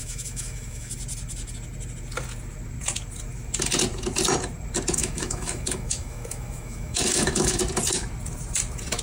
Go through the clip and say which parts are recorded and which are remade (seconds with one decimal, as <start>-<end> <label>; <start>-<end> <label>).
0.0-0.9 remade; 0.9-5.0 recorded; 5.0-7.6 remade; 7.6-9.0 recorded

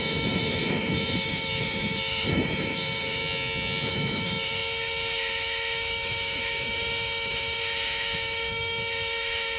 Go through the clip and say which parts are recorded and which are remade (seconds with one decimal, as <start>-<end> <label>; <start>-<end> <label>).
0.0-3.2 remade; 3.2-3.9 recorded; 3.9-9.6 remade

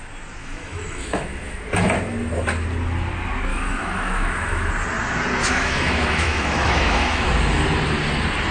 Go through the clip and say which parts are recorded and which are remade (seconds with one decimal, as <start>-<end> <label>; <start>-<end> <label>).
0.0-0.4 recorded; 0.4-1.6 remade; 1.6-3.5 recorded; 3.5-4.7 remade; 4.7-5.4 recorded; 5.4-7.3 remade; 7.3-8.5 recorded

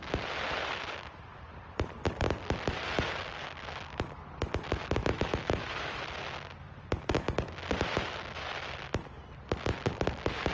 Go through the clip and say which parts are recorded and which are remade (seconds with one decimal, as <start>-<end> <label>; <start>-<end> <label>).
0.0-5.0 recorded; 5.0-6.0 remade; 6.0-10.5 recorded

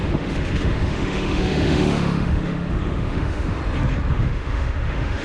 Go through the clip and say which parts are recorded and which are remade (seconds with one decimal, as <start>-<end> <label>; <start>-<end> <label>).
0.0-3.6 remade; 3.6-4.1 recorded; 4.1-5.2 remade

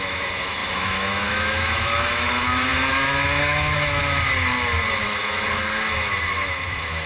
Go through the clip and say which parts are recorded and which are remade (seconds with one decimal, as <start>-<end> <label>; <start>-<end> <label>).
0.0-2.7 remade; 2.7-3.4 recorded; 3.4-4.0 remade; 4.0-4.9 recorded; 4.9-7.1 remade

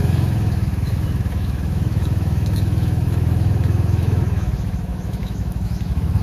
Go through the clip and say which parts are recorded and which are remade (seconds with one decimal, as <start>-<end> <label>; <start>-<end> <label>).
0.0-6.2 remade